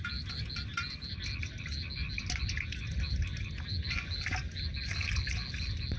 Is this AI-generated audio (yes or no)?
no